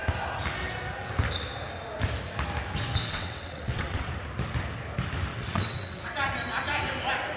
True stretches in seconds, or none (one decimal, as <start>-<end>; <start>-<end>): 0.0-3.0; 4.1-5.3; 6.0-7.4